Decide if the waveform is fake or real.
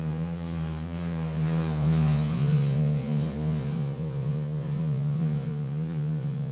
fake